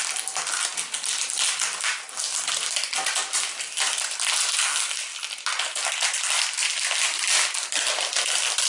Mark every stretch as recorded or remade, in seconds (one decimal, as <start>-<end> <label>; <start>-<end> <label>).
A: 0.0-8.7 recorded